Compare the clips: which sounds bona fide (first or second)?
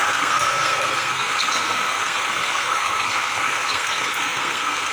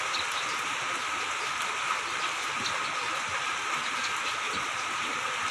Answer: second